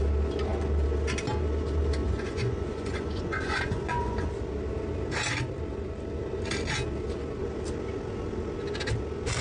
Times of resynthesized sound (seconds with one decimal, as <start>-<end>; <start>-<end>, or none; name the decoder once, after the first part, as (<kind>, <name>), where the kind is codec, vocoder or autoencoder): 2.0-4.3 (vocoder, Vocos)